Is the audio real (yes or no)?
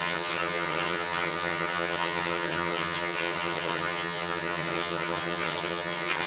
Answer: no